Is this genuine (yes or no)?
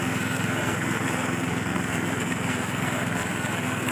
no